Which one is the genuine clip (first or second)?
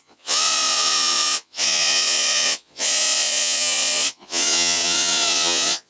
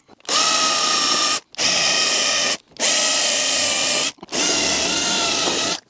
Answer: second